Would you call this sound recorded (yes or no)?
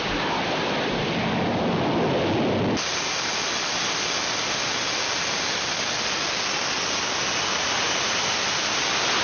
yes